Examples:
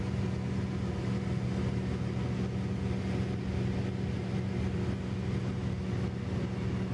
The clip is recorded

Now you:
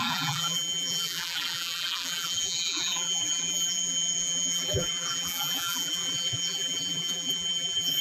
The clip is remade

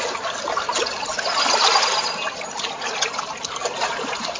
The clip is recorded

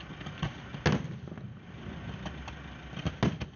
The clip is recorded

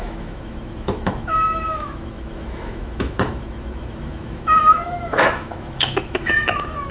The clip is remade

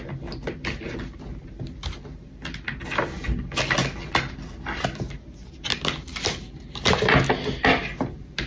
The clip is recorded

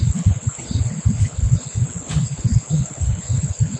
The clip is remade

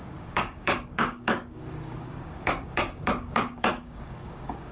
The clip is remade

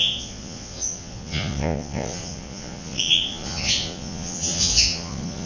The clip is remade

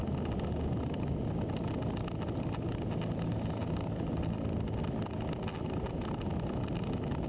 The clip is recorded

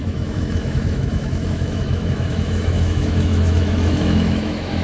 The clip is remade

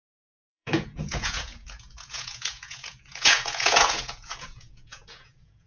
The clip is remade